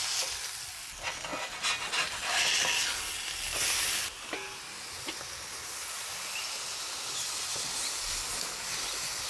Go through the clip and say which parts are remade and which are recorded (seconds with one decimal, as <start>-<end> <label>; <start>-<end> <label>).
0.0-9.3 recorded